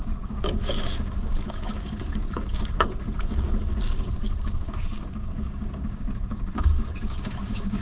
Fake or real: fake